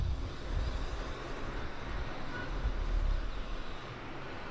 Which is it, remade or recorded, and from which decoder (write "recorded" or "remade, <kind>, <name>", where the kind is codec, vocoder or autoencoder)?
recorded